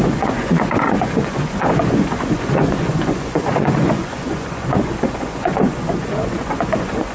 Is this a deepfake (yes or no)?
yes